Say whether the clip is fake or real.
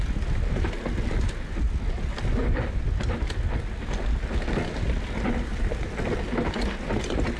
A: real